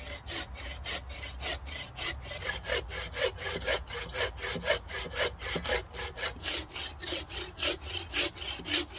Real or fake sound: real